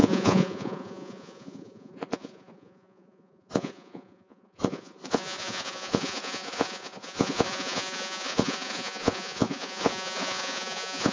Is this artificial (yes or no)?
yes